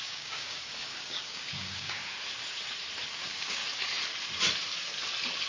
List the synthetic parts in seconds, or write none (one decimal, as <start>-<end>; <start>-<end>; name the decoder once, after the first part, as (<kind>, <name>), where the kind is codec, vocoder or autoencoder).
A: 0.0-2.0 (codec, DAC); 3.1-3.6

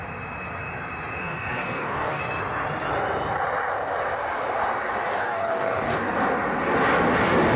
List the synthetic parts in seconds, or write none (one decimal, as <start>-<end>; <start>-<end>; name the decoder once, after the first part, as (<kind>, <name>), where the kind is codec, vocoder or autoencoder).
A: 1.2-2.2 (codec, DAC); 5.1-6.1

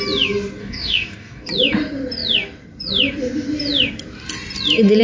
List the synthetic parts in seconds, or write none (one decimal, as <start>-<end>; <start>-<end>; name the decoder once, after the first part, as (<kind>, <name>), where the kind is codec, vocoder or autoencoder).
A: 0.6-1.5 (codec, DAC)